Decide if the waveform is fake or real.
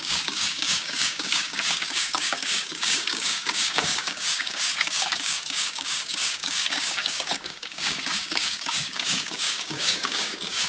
fake